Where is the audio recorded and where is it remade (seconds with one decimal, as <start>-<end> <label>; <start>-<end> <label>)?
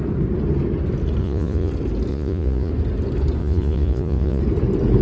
0.0-1.2 recorded; 1.2-1.7 remade; 1.7-2.1 recorded; 2.1-2.7 remade; 2.7-3.4 recorded; 3.4-4.4 remade; 4.4-5.0 recorded